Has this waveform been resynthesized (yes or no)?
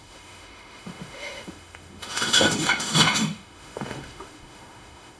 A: yes